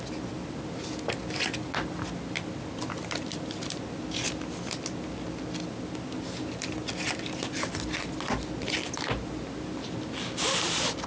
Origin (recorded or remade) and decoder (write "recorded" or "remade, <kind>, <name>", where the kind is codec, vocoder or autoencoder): recorded